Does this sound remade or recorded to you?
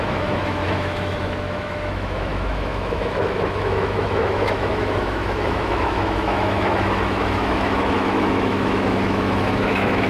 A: remade